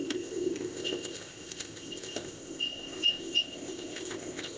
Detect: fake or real fake